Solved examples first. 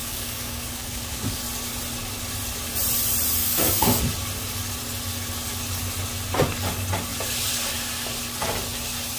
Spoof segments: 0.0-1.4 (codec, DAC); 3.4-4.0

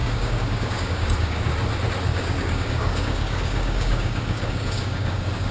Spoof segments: 0.0-1.5 (codec, DAC); 2.1-5.5

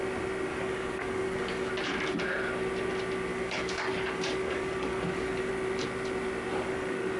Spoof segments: 0.5-1.7 (codec, DAC); 3.3-5.5; 6.5-7.2

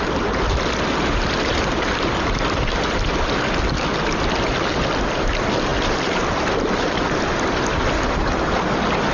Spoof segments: none

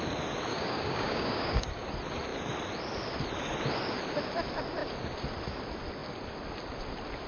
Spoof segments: 0.5-1.9 (codec, DAC)

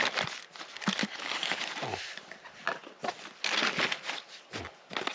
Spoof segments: 1.0-1.6 (codec, DAC)

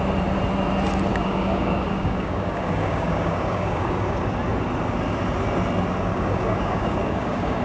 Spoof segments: 1.1-4.2 (codec, DAC); 6.1-7.6

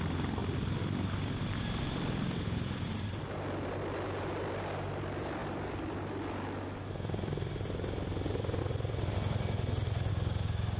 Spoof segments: 10.1-10.8 (codec, DAC)